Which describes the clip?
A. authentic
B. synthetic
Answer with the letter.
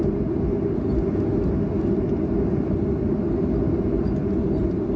A